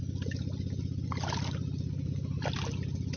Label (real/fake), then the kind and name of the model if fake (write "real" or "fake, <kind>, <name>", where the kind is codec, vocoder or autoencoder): real